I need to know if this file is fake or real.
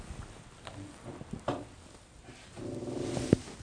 real